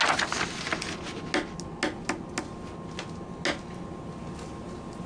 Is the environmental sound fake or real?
real